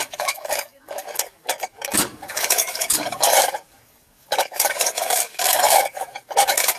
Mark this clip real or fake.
fake